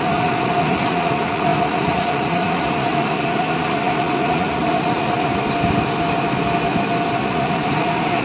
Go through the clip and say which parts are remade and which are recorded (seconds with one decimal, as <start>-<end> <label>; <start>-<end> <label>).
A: 0.0-5.3 remade; 5.3-7.2 recorded; 7.2-8.2 remade